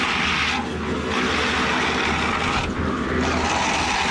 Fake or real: real